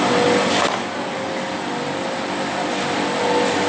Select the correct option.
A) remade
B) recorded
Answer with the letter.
B